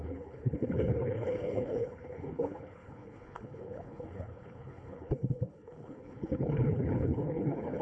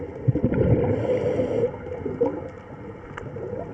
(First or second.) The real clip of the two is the second